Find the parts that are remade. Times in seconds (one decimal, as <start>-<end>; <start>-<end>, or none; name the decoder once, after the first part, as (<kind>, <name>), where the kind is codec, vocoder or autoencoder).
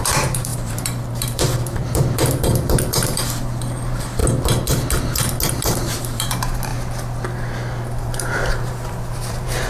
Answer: 0.0-4.2 (vocoder, BigVGAN v2); 5.5-6.7; 8.0-9.7